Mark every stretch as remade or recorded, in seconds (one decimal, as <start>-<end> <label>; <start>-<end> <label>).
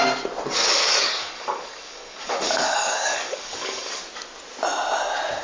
0.0-0.8 recorded; 0.8-4.0 remade; 4.0-5.4 recorded